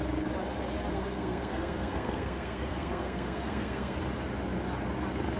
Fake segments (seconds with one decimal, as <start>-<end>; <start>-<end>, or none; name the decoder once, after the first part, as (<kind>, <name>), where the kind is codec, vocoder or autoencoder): 0.9-4.0 (codec, SNAC)